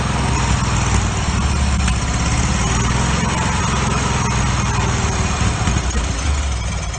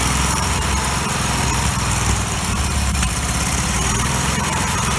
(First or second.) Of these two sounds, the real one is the first